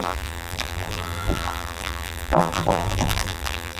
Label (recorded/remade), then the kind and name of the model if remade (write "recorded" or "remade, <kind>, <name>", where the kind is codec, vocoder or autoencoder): remade, vocoder, BigVGAN v2